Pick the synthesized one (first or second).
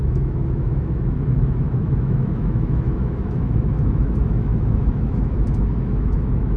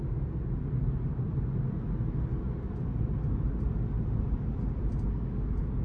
first